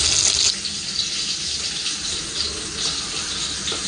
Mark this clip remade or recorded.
recorded